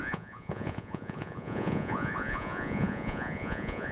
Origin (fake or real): fake